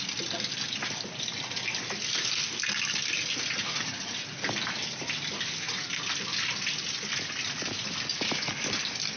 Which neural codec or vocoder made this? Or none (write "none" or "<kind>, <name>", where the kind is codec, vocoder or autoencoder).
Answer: none